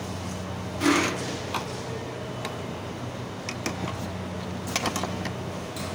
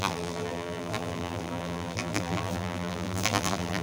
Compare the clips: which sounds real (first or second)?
first